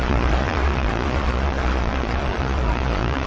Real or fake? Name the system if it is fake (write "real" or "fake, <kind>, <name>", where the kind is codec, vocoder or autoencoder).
fake, vocoder, Vocos